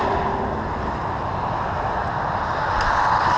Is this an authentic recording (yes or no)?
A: yes